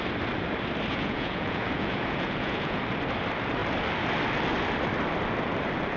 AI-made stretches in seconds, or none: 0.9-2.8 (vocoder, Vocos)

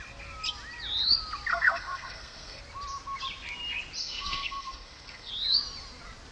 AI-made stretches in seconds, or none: 1.5-2.6 (codec, SNAC); 4.0-5.3

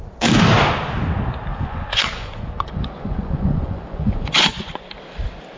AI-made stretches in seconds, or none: 1.5-4.9 (vocoder, Vocos)